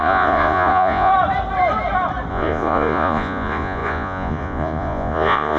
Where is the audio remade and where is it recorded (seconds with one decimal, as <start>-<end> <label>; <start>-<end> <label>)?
0.0-1.1 remade; 1.1-2.3 recorded; 2.3-5.6 remade